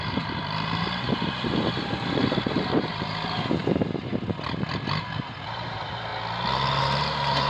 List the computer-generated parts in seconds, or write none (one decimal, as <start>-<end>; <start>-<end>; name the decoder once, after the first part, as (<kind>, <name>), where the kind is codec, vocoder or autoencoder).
0.0-4.1 (vocoder, BigVGAN v2); 5.2-6.1; 6.8-7.5